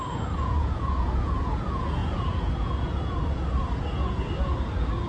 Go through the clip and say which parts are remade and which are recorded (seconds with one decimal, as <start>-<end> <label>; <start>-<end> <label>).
0.0-5.1 remade